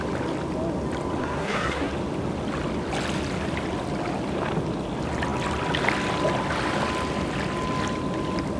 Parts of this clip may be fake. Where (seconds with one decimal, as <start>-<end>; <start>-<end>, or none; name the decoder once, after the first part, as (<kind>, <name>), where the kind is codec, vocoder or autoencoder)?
1.2-1.9 (codec, SNAC)